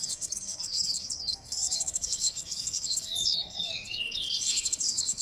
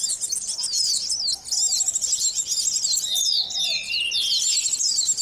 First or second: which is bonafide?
second